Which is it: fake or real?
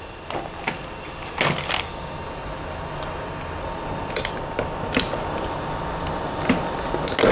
real